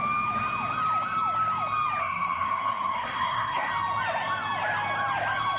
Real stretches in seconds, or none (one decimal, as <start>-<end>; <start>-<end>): 0.0-2.0; 3.7-5.6